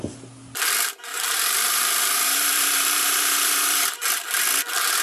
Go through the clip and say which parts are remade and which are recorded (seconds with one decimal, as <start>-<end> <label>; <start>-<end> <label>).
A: 0.0-1.1 recorded; 1.1-4.0 remade; 4.0-5.0 recorded